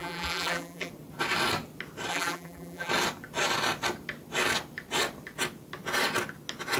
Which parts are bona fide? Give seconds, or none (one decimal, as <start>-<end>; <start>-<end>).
0.9-2.1; 2.9-6.8